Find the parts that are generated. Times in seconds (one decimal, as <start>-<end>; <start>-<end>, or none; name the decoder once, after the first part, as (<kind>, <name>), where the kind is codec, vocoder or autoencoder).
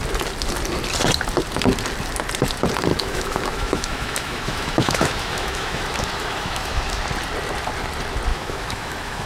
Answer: 2.9-7.0 (autoencoder, DAC-VAE); 8.3-9.3